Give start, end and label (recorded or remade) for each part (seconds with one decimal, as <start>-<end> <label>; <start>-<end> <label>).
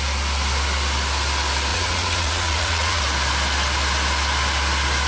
0.0-1.7 recorded; 1.7-3.0 remade; 3.0-5.1 recorded